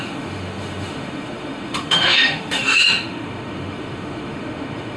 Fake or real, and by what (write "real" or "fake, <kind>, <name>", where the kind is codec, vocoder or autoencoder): fake, autoencoder, DAC-VAE